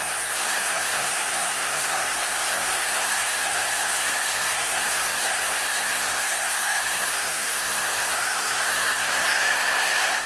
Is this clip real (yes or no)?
no